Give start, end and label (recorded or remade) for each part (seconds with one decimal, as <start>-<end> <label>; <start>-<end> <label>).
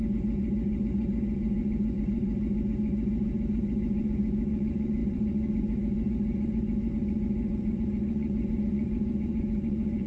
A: 0.0-10.1 remade